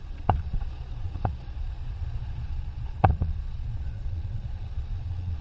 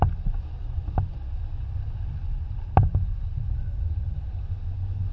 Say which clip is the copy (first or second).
first